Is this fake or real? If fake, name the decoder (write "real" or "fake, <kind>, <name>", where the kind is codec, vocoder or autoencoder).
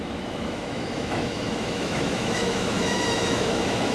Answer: fake, autoencoder, DAC-VAE